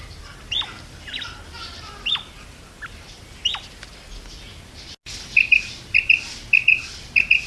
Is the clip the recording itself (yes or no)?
yes